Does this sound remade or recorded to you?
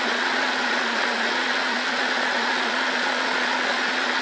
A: remade